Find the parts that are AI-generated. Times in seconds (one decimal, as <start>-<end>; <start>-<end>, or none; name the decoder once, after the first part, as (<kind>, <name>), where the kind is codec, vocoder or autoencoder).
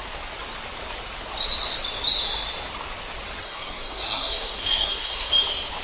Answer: 3.4-5.3 (codec, SNAC)